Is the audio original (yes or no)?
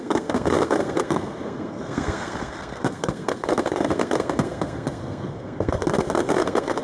no